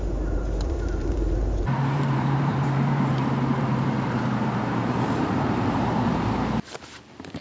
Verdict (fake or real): fake